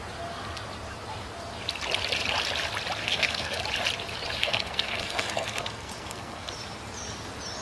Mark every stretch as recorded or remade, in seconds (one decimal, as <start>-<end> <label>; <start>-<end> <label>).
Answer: 0.0-3.0 recorded; 3.0-3.6 remade; 3.6-4.4 recorded; 4.4-6.5 remade; 6.5-7.6 recorded